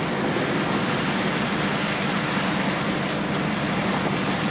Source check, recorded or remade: recorded